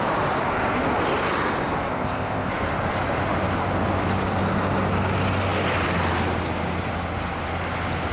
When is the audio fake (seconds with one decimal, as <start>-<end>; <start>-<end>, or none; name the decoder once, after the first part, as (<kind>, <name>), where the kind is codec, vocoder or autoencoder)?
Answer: 1.9-2.5 (codec, ZipCodec)